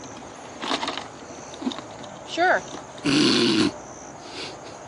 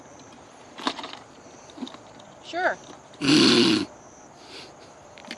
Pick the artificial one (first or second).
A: second